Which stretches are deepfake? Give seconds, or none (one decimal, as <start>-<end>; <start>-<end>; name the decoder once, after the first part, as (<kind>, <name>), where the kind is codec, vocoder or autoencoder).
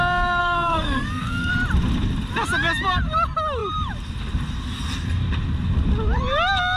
0.4-1.5 (codec, SNAC)